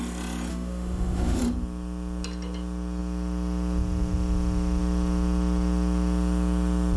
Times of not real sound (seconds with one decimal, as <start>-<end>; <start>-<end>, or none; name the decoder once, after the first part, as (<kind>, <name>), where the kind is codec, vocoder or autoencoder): 0.5-1.4 (autoencoder, DAC-VAE)